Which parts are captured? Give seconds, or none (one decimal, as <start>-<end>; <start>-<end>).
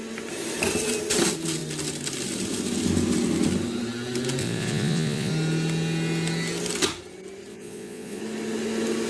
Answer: 0.0-4.4; 5.3-7.5; 8.2-9.1